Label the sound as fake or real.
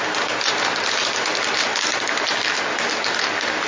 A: real